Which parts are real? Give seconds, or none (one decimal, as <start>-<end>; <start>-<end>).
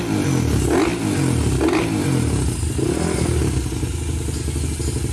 0.0-5.1